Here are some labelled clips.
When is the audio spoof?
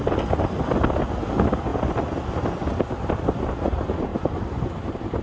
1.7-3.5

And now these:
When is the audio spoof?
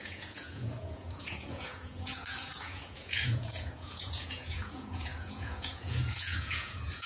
0.0-7.1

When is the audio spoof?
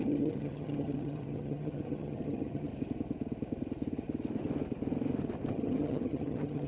0.0-2.7; 5.5-6.7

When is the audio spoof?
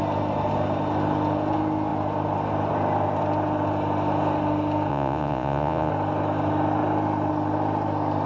4.9-5.9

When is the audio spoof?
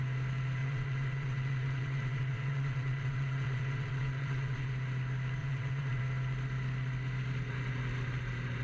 0.6-4.7; 5.4-6.0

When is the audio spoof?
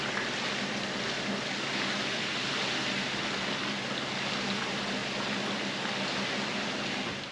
none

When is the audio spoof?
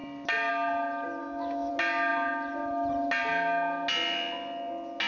1.2-1.7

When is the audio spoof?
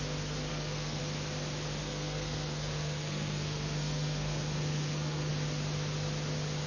0.5-1.0; 1.8-5.3